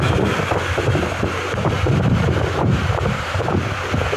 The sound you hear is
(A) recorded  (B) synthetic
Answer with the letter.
B